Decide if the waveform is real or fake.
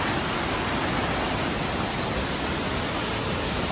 real